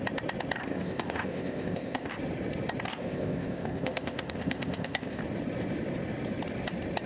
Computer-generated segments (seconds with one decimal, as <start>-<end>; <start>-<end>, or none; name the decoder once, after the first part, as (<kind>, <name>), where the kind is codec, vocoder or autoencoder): 0.6-2.1 (codec, ZipCodec); 2.9-5.2

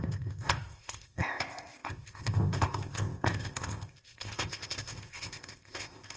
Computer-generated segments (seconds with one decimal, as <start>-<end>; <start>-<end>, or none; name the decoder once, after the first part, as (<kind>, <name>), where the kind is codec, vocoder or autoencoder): 0.0-6.2 (codec, ZipCodec)

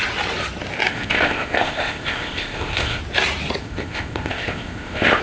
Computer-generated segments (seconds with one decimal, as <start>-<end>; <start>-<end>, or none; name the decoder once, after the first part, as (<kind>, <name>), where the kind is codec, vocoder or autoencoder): 0.9-3.0 (codec, ZipCodec); 3.6-5.2

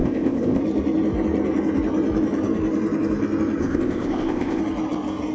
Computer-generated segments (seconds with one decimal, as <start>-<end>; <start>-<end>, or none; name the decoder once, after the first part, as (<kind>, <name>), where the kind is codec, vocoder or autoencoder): 0.0-0.6 (codec, ZipCodec); 3.6-4.6

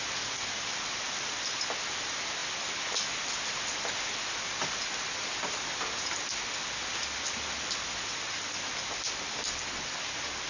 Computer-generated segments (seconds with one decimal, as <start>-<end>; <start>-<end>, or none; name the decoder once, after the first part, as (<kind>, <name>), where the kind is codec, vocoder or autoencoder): none